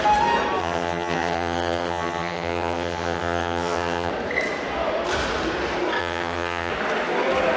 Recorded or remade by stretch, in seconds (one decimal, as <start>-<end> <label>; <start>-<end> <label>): 0.0-0.6 recorded; 0.6-4.1 remade; 4.1-6.0 recorded; 6.0-6.7 remade; 6.7-7.6 recorded